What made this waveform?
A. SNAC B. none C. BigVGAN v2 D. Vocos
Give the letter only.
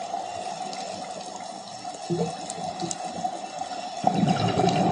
B